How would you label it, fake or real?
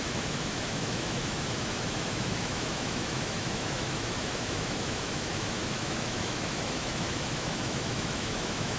fake